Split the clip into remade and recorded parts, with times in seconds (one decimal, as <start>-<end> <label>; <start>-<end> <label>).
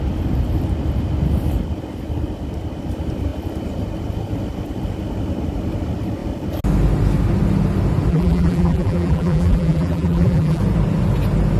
0.0-8.1 recorded; 8.1-10.6 remade; 10.6-11.6 recorded